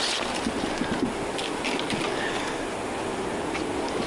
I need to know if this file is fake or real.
real